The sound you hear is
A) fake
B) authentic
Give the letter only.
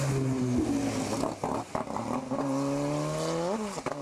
B